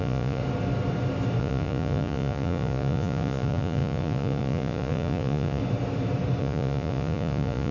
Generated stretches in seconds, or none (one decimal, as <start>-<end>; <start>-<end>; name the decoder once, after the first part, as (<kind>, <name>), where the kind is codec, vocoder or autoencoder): 0.0-0.4 (vocoder, Vocos); 1.4-5.6; 6.4-7.7